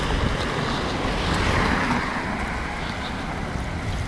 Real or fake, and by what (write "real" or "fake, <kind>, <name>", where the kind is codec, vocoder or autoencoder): real